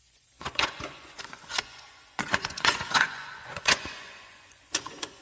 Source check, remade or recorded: remade